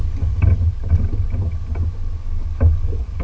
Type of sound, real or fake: real